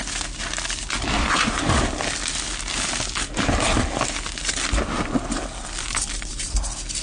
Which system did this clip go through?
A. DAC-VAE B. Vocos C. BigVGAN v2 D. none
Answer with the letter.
D